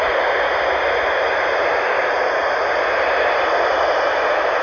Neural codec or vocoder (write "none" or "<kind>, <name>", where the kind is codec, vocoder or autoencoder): none